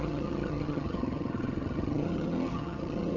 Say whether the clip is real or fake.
fake